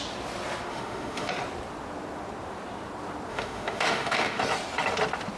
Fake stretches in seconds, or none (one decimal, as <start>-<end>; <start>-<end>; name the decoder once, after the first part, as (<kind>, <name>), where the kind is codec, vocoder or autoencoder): 0.7-1.3 (autoencoder, DAC-VAE); 3.3-4.4